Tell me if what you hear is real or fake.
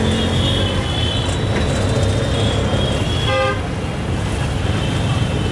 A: real